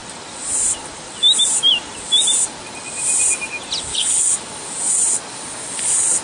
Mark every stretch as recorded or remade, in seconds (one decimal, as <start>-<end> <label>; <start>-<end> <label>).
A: 0.0-3.9 recorded; 3.9-4.4 remade; 4.4-6.2 recorded